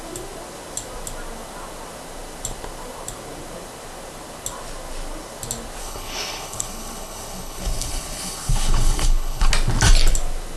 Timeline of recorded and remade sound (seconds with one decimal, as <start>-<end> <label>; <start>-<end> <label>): 0.0-5.8 recorded; 5.8-9.5 remade; 9.5-10.6 recorded